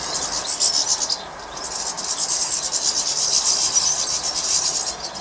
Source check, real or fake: real